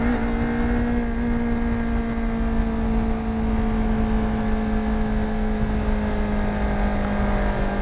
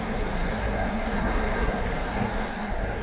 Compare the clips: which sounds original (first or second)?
first